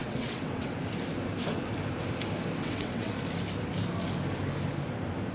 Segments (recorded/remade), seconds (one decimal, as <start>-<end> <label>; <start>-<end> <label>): 0.0-0.7 remade; 0.7-2.6 recorded; 2.6-3.1 remade; 3.1-5.3 recorded

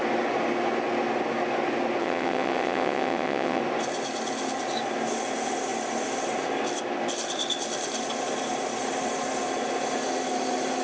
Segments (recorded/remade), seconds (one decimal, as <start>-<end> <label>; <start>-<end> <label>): 0.0-2.0 recorded; 2.0-3.6 remade; 3.6-10.8 recorded

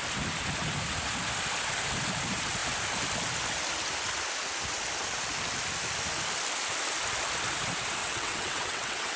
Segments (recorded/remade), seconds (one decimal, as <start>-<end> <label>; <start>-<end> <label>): 0.0-8.0 recorded; 8.0-9.2 remade

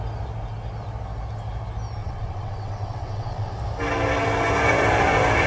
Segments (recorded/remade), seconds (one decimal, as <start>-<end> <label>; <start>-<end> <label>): 0.0-2.0 recorded; 2.0-3.5 remade; 3.5-5.5 recorded